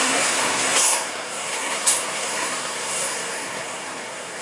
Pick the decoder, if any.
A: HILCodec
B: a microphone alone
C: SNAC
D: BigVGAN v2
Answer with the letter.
C